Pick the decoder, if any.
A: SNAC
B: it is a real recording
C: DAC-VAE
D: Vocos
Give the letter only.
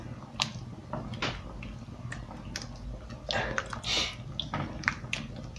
B